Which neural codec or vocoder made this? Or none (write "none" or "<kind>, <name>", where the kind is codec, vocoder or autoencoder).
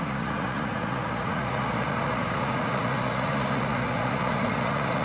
vocoder, Vocos